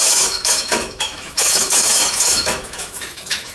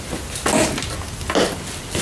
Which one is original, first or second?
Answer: second